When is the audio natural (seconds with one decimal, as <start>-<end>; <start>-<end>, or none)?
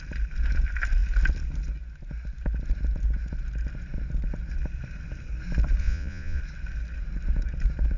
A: 0.0-5.8; 6.4-8.0